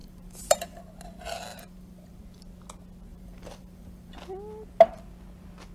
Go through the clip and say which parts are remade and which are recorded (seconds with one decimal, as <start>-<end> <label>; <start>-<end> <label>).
0.0-0.8 remade; 0.8-1.5 recorded; 1.5-2.2 remade; 2.2-3.1 recorded; 3.1-4.1 remade; 4.1-5.7 recorded